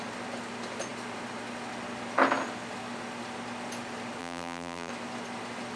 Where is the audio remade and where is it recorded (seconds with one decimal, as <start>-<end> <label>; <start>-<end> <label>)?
0.0-4.2 recorded; 4.2-4.9 remade; 4.9-5.8 recorded